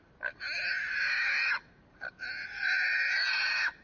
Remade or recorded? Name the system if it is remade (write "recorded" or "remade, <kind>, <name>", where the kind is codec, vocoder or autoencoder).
recorded